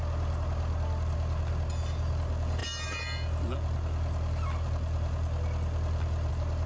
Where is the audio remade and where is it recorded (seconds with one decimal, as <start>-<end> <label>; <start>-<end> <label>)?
0.0-6.7 recorded